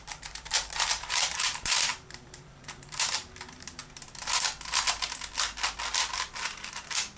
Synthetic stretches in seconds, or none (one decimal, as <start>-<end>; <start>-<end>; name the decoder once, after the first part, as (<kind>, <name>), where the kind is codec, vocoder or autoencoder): 0.0-3.8 (vocoder, BigVGAN v2); 6.7-7.2